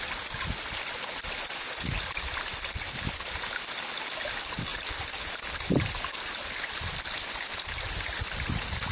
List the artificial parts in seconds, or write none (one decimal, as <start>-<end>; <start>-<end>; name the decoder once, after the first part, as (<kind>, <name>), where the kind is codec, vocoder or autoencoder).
none